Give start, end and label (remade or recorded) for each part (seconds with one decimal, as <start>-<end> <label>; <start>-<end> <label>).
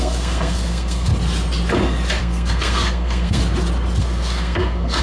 0.0-1.1 remade; 1.1-2.2 recorded; 2.2-3.4 remade; 3.4-4.0 recorded; 4.0-5.0 remade